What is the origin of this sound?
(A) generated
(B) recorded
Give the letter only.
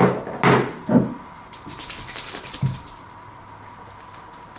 B